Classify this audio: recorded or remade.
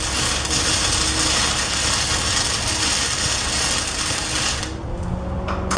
recorded